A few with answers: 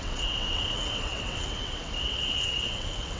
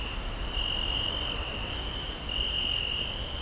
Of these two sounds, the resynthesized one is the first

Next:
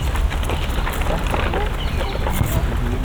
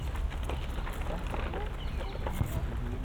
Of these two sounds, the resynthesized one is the first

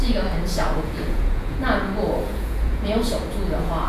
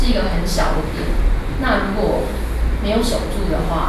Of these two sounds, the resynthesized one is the first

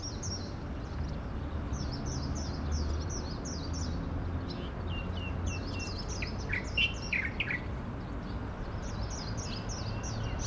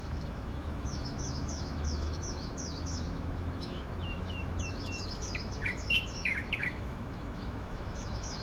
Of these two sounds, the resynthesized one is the second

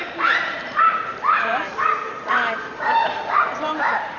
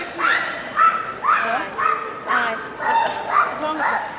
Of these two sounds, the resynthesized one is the first